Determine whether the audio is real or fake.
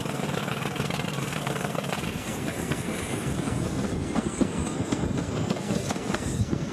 fake